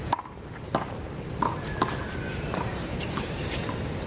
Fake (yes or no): no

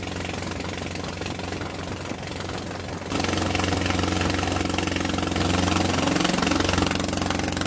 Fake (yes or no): no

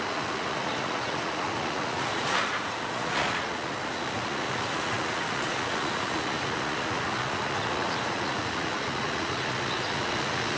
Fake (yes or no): yes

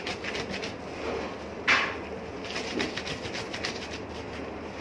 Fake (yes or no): no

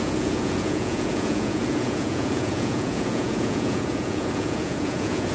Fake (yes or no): yes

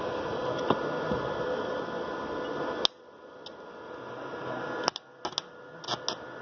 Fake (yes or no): no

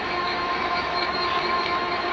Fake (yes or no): yes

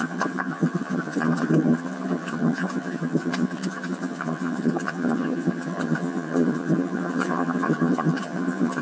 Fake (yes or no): yes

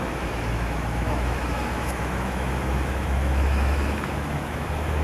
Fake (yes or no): yes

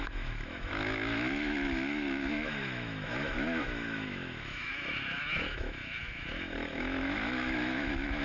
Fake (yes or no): yes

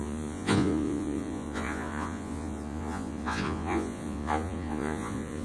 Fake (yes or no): yes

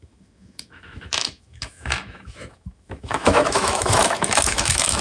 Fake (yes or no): yes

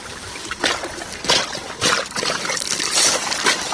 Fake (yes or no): yes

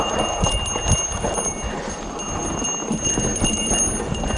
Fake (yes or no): no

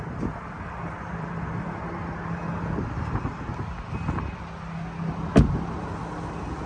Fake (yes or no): no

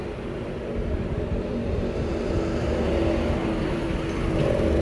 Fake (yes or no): no